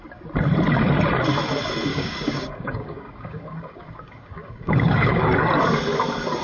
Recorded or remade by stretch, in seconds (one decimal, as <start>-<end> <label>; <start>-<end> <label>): 0.0-1.9 recorded; 1.9-5.4 remade; 5.4-6.4 recorded